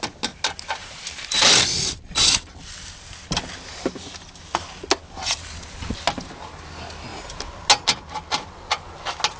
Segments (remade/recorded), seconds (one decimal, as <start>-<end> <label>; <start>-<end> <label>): 0.0-0.8 recorded; 0.8-1.6 remade; 1.6-7.1 recorded; 7.1-7.6 remade; 7.6-9.4 recorded